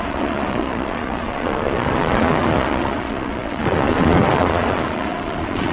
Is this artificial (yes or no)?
yes